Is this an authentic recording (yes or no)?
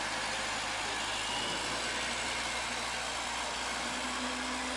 yes